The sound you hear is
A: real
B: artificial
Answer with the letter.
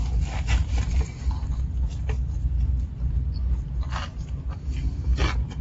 A